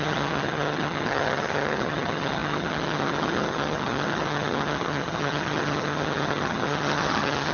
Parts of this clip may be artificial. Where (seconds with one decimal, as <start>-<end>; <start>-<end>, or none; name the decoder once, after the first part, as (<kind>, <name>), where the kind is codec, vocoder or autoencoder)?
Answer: 0.0-7.5 (vocoder, HiFi-GAN)